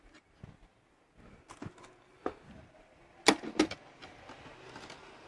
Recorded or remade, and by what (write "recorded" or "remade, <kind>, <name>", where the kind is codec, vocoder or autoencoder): recorded